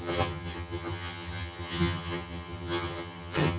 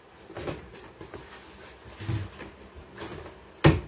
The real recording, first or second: second